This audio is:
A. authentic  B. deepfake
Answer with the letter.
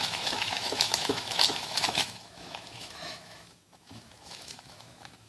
B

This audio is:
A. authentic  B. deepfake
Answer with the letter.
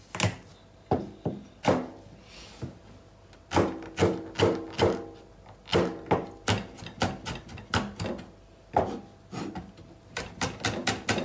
A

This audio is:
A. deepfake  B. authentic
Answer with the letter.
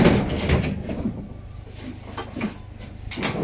B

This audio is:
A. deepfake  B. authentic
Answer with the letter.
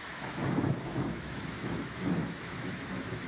A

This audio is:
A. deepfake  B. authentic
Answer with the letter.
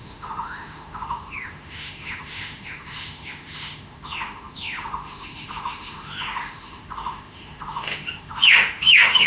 A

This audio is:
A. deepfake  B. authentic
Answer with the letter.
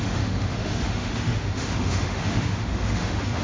A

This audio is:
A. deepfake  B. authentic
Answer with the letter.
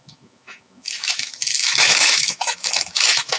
A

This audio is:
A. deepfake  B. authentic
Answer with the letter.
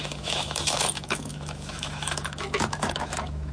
A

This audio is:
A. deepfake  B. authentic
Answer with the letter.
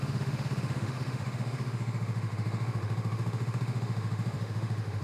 A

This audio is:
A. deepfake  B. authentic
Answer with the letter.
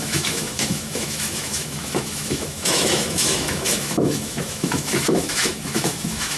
A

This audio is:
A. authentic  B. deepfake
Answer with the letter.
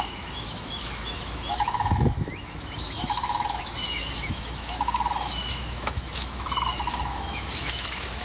B